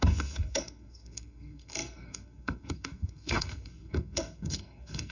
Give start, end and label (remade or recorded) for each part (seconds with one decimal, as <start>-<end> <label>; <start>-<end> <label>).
0.0-5.1 remade